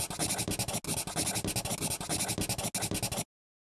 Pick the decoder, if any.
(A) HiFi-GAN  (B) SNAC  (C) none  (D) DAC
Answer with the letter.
C